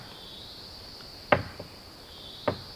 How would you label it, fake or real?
real